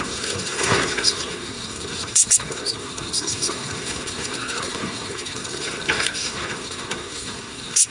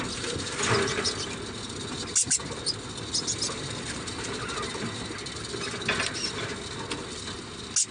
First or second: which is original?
second